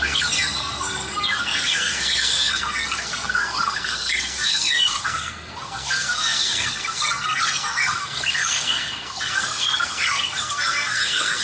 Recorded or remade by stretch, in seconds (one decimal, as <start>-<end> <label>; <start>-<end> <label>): 0.0-11.4 remade